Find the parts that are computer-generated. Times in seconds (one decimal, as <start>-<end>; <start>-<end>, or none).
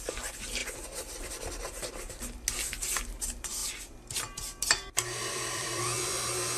3.6-6.6